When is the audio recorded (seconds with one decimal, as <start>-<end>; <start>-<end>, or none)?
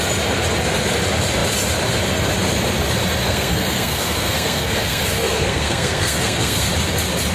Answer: 0.0-3.2; 6.7-7.3